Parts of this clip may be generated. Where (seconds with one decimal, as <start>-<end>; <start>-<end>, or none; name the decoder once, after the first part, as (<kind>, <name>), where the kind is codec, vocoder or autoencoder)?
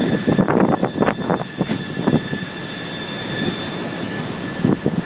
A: none